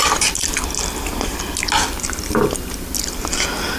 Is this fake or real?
real